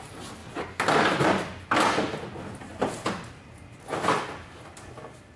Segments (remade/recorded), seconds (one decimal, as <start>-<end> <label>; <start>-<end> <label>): 0.0-5.4 recorded